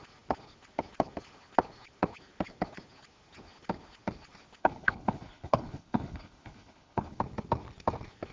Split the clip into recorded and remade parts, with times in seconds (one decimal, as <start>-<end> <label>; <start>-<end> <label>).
0.0-4.6 recorded; 4.6-7.2 remade; 7.2-8.3 recorded